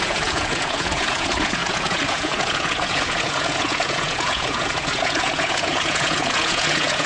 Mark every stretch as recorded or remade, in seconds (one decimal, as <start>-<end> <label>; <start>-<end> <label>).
0.0-7.1 remade